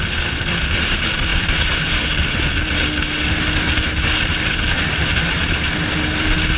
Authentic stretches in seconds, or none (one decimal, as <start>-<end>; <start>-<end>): 0.0-1.3; 1.9-6.6